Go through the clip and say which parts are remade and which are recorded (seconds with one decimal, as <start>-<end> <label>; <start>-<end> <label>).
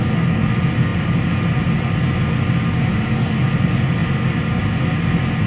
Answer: 0.0-5.5 recorded